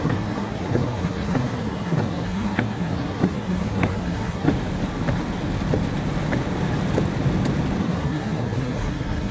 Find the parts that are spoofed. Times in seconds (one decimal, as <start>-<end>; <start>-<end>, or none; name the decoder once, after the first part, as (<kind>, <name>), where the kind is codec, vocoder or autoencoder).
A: 0.0-4.5 (codec, SNAC); 7.8-9.3